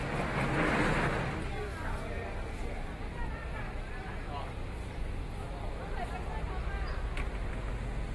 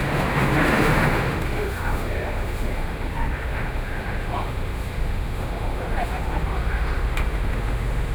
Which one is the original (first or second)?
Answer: first